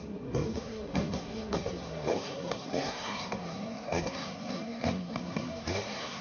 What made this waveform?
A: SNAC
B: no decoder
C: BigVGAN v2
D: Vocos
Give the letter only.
A